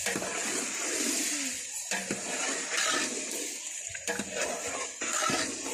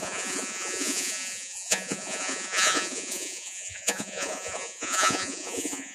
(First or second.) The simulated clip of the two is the second